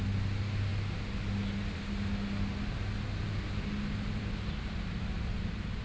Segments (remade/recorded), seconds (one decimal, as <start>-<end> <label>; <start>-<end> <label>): 0.0-5.8 recorded